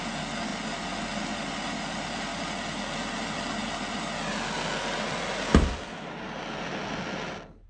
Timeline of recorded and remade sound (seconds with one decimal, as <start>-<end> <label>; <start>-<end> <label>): 0.0-7.7 recorded